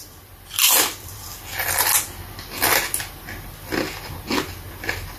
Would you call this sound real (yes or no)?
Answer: yes